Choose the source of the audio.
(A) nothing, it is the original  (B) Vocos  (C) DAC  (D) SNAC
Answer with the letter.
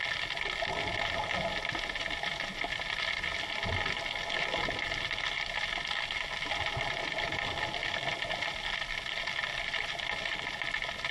A